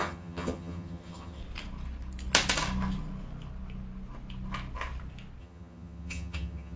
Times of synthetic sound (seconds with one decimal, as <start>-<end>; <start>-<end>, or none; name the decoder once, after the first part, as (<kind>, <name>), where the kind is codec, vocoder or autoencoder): 0.0-1.4 (vocoder, HiFi-GAN); 5.4-6.8